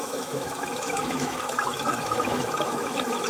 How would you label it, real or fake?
fake